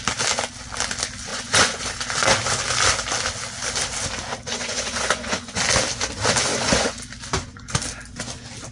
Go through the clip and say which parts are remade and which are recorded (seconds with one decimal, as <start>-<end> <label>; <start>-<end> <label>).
0.0-1.3 recorded; 1.3-1.8 remade; 1.8-4.5 recorded; 4.5-5.6 remade; 5.6-6.5 recorded; 6.5-7.0 remade; 7.0-8.7 recorded